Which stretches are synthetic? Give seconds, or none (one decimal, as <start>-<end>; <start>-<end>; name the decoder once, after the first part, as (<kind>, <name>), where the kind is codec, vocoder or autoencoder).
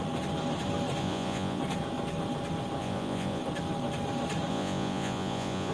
1.0-1.6 (vocoder, Vocos); 2.8-3.4; 4.5-5.7